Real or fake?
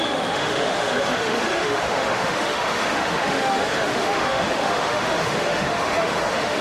fake